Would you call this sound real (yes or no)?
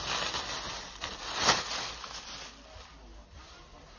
yes